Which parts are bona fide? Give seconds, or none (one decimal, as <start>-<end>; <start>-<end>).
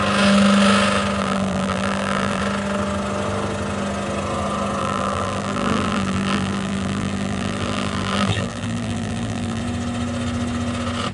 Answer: 0.0-1.2; 2.4-4.8; 9.6-11.1